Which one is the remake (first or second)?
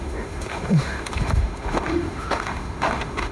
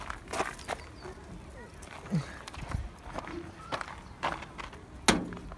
first